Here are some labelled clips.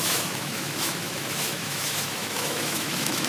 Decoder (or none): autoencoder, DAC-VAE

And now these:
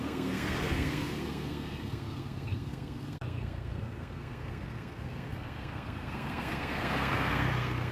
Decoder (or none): codec, SNAC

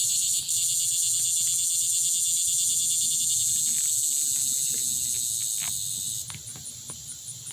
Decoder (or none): none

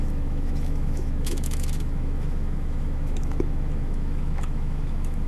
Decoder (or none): autoencoder, DAC-VAE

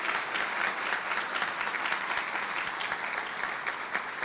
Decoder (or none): none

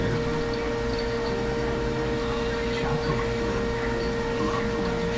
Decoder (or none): none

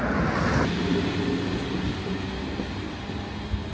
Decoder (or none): none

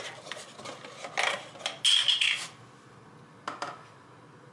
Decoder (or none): none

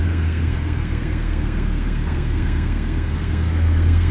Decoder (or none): codec, SNAC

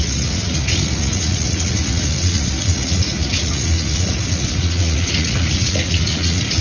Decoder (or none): vocoder, Vocos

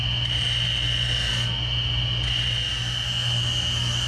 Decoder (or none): none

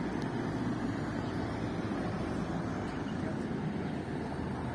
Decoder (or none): none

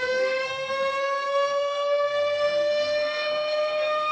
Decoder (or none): codec, SNAC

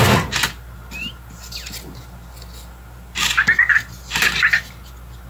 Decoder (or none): none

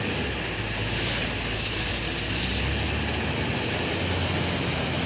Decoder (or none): none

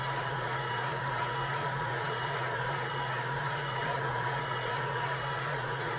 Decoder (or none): vocoder, Vocos